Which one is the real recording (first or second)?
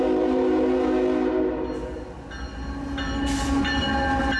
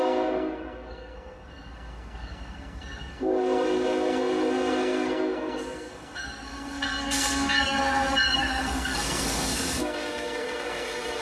first